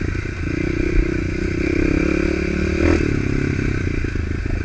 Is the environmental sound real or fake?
real